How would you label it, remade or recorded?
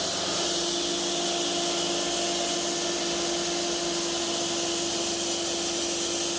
recorded